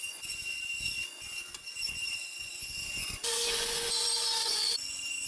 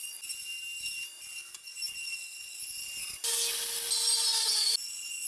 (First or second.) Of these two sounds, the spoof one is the first